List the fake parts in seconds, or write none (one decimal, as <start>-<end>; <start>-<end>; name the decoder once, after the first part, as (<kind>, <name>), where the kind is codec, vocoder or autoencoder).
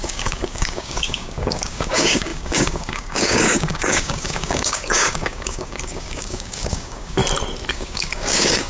0.0-7.2 (codec, DAC); 7.7-8.7